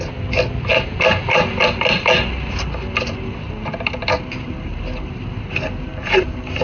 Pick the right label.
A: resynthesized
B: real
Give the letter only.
B